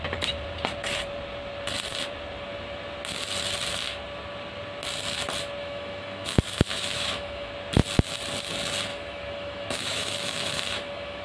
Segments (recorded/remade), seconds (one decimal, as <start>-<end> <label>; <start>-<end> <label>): 0.0-5.6 recorded; 5.6-7.5 remade; 7.5-8.9 recorded; 8.9-11.2 remade